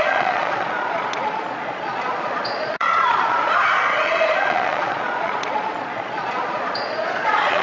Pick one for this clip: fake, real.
fake